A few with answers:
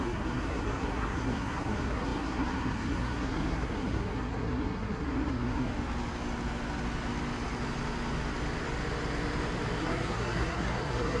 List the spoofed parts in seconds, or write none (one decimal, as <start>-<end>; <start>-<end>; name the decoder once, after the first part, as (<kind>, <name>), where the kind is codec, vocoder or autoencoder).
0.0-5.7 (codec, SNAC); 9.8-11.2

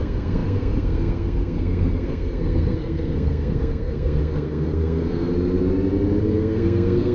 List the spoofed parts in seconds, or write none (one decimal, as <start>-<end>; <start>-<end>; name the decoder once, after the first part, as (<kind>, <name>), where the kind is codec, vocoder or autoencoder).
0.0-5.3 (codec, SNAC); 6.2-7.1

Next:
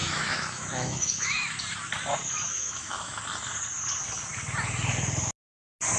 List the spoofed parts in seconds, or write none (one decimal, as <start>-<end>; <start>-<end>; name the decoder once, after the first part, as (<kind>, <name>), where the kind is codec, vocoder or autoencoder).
0.0-1.6 (autoencoder, DAC-VAE); 2.5-3.2

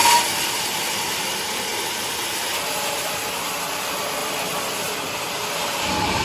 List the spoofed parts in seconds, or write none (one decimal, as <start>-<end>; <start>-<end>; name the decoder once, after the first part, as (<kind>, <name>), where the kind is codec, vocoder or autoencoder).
0.0-1.1 (vocoder, BigVGAN v2); 4.2-6.2

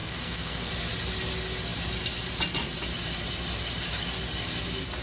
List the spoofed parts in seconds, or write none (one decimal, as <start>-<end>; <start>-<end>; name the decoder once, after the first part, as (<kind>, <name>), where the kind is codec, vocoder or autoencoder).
0.0-0.7 (codec, SNAC)

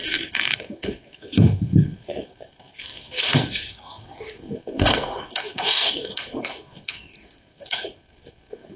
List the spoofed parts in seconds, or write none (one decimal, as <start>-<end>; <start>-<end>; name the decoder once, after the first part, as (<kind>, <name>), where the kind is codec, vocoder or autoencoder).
0.0-8.8 (codec, SNAC)